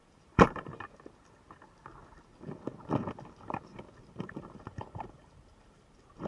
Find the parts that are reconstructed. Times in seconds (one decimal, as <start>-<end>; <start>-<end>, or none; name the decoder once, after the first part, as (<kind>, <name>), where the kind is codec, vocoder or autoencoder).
0.0-0.7 (vocoder, BigVGAN v2); 4.0-6.3